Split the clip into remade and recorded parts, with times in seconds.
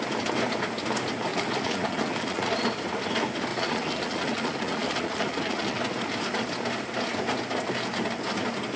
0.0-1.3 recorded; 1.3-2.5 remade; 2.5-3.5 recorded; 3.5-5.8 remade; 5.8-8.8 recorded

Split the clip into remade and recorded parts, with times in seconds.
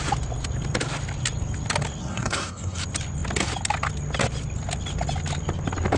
0.0-2.0 recorded; 2.0-2.8 remade; 2.8-6.0 recorded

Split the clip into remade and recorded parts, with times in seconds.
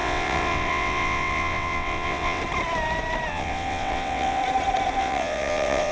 0.0-2.4 remade; 2.4-3.3 recorded; 3.3-4.4 remade; 4.4-5.0 recorded; 5.0-5.9 remade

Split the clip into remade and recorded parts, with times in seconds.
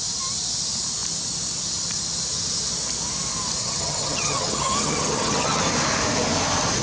0.0-3.6 recorded; 3.6-5.6 remade; 5.6-6.8 recorded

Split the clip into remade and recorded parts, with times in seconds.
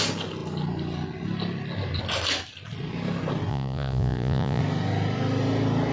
0.0-3.5 recorded; 3.5-4.6 remade; 4.6-5.9 recorded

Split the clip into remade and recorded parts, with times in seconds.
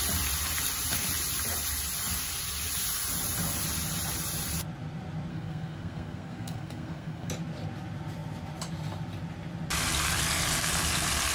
0.0-5.3 recorded; 5.3-7.3 remade; 7.3-11.3 recorded